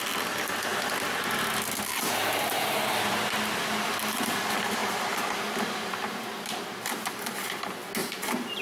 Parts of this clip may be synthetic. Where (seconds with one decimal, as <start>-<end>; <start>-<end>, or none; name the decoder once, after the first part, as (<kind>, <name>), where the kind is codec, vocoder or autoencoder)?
4.8-6.6 (vocoder, BigVGAN v2); 8.0-8.6